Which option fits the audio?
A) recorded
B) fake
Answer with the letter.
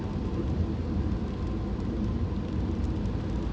A